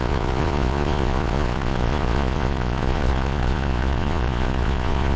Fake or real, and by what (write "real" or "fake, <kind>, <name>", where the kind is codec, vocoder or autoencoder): fake, vocoder, Vocos